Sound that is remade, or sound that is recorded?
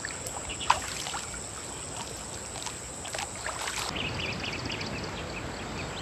recorded